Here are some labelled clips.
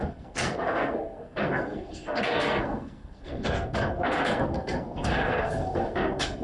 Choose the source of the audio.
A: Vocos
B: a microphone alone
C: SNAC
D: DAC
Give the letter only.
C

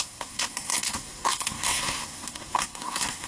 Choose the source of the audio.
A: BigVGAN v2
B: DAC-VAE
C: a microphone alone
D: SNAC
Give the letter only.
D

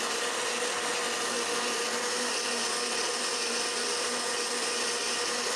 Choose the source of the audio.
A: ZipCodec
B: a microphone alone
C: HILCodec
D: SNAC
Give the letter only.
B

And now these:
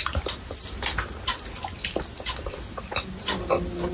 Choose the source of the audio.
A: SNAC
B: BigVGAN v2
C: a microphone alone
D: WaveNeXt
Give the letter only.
C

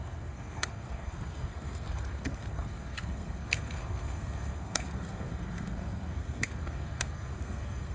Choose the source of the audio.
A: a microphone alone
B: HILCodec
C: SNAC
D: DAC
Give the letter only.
C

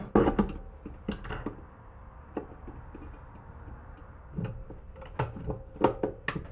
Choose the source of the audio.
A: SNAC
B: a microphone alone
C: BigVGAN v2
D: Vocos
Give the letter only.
B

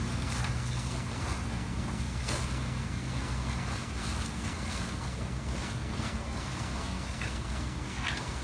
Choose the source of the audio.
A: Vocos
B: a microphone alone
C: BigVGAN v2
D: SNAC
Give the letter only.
D